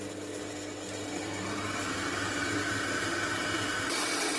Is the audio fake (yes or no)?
no